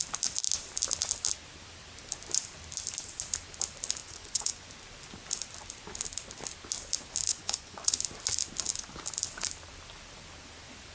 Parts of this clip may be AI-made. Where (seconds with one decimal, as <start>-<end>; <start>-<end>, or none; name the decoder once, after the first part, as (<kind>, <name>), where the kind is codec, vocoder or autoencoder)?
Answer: 4.0-4.7 (vocoder, Vocos); 7.3-8.0